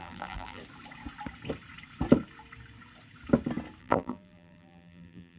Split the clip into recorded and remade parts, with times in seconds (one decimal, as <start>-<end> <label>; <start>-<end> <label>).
0.0-0.6 remade; 0.6-3.8 recorded; 3.8-5.4 remade